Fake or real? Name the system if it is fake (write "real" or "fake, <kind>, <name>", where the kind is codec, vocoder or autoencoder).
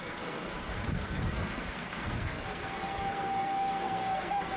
fake, codec, SNAC